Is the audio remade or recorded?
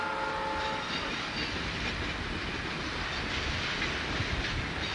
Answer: recorded